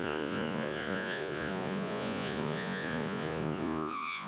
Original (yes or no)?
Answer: no